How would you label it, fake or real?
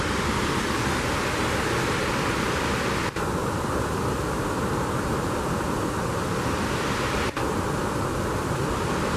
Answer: real